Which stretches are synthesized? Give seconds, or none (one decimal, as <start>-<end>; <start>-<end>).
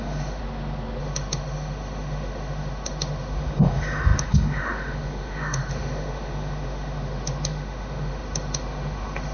0.0-0.4; 1.0-9.3